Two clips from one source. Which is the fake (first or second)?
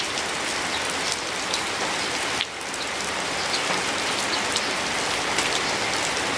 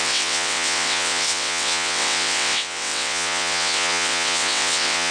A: second